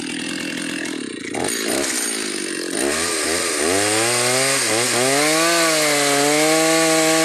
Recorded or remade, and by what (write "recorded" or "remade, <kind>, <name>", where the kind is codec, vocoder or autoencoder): recorded